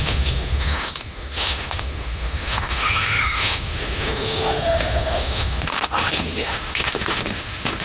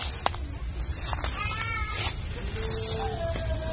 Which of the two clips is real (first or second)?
second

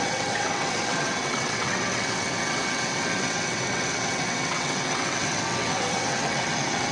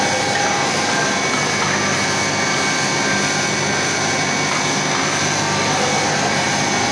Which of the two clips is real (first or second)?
second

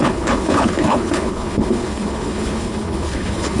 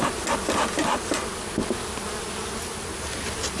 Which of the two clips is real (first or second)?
second